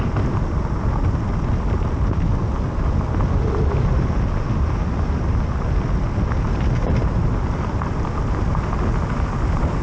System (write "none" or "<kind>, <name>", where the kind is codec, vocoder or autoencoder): none